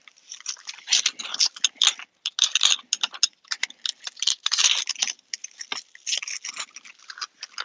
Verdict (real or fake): real